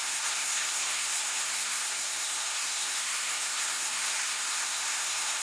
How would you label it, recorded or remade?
remade